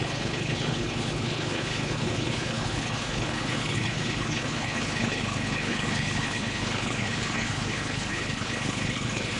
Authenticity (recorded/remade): remade